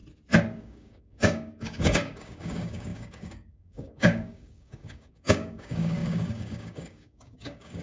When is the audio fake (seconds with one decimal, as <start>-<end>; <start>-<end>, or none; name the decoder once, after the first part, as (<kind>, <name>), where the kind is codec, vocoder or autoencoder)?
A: 0.6-7.8 (codec, DAC)